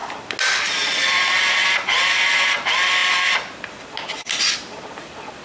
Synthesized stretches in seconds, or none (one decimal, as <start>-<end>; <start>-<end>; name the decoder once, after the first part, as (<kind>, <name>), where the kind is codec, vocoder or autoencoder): none